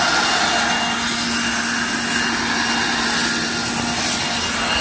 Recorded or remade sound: recorded